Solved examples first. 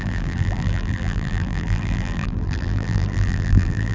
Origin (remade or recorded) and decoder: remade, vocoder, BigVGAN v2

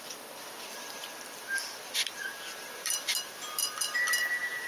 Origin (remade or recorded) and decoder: remade, vocoder, BigVGAN v2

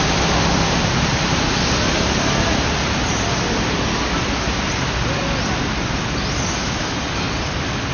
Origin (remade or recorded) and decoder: recorded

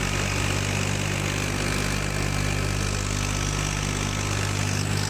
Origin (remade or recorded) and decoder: recorded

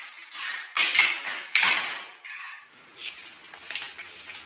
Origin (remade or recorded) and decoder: remade, vocoder, BigVGAN v2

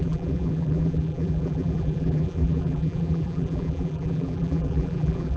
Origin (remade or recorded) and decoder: remade, vocoder, BigVGAN v2